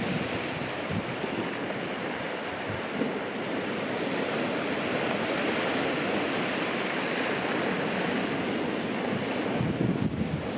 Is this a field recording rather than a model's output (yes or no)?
yes